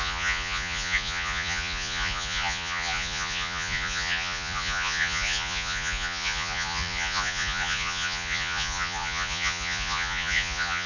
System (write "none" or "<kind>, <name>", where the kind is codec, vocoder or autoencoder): vocoder, Vocos